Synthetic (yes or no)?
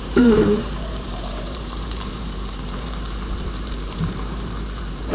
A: yes